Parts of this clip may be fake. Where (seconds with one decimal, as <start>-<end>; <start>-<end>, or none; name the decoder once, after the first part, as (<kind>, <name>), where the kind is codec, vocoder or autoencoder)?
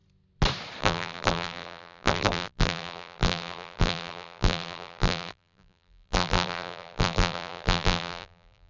0.8-8.7 (vocoder, BigVGAN v2)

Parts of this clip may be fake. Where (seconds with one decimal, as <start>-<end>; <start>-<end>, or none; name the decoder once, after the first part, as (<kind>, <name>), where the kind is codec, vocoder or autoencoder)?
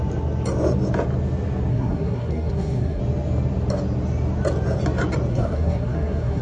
1.7-3.0 (codec, SNAC); 5.3-6.4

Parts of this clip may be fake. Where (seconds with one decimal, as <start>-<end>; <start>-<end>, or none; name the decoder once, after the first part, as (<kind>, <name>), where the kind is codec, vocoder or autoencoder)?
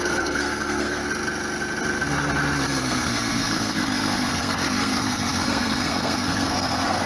0.0-1.0 (codec, SNAC); 2.8-7.1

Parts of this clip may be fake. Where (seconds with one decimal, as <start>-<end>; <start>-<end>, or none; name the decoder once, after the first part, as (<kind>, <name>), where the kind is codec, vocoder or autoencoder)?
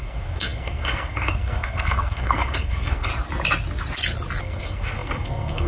0.0-3.1 (codec, SNAC); 4.4-5.7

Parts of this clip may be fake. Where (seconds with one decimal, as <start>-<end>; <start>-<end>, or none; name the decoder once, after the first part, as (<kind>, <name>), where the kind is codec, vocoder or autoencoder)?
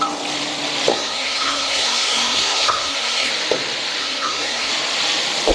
0.9-3.3 (codec, SNAC); 4.0-4.7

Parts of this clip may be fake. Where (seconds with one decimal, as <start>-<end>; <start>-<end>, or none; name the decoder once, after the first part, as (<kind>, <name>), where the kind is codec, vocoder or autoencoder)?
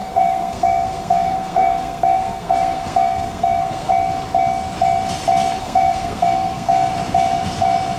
0.0-3.9 (codec, SNAC); 5.6-6.9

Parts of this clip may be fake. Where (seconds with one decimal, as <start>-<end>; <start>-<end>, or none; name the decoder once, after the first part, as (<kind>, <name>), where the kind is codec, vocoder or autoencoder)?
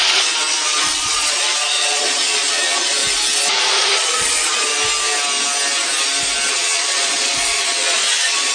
0.0-3.0 (vocoder, Vocos); 3.6-4.7; 6.5-8.5